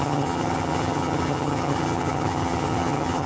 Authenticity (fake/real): fake